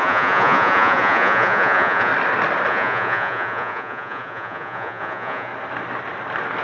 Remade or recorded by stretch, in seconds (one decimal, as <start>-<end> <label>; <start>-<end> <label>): 0.0-2.1 remade; 2.1-2.7 recorded; 2.7-5.5 remade; 5.5-6.6 recorded